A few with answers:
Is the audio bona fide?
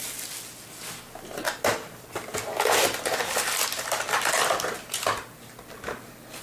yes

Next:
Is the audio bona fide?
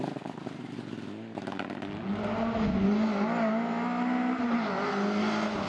yes